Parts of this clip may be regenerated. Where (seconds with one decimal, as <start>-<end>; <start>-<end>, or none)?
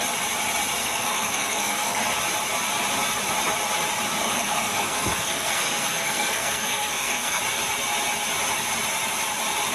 0.8-2.0; 4.2-7.4